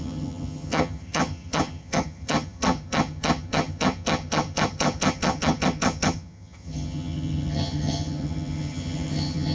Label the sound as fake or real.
fake